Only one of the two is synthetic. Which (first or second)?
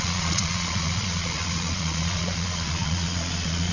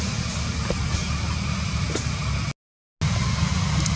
first